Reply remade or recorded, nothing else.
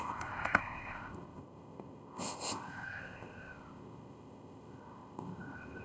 remade